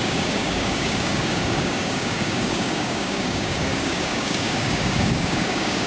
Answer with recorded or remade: remade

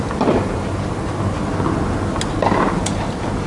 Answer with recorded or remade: recorded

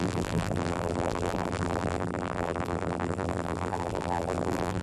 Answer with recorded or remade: remade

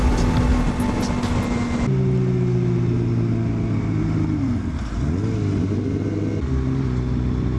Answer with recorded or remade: recorded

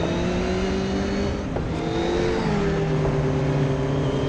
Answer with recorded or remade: recorded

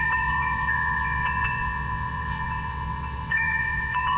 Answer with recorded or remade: remade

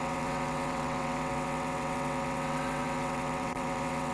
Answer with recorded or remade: remade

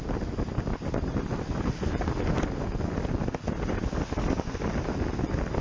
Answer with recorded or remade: recorded